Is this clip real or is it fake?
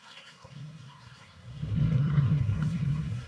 fake